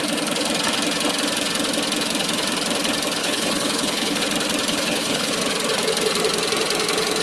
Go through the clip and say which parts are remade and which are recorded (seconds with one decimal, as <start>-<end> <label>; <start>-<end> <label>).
0.0-3.2 recorded; 3.2-4.2 remade; 4.2-4.7 recorded; 4.7-5.4 remade; 5.4-7.2 recorded